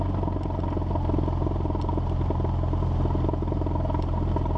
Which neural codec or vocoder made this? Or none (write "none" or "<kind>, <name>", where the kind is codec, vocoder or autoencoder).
none